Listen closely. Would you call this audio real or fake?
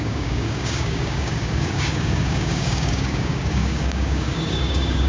fake